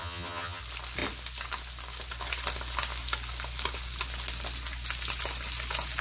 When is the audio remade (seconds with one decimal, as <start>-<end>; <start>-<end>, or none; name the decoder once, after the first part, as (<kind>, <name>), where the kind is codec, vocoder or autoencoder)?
0.0-0.6 (vocoder, HiFi-GAN)